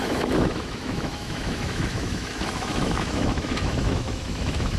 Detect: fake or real fake